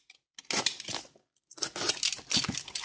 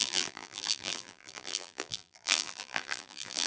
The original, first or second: first